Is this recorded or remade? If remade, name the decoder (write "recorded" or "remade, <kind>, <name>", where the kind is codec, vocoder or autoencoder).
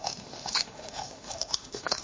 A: remade, autoencoder, DAC-VAE